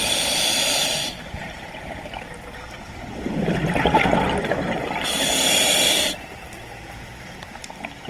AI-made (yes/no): no